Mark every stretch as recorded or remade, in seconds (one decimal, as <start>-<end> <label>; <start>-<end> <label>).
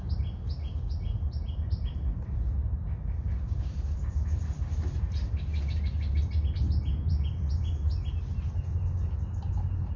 0.0-10.0 recorded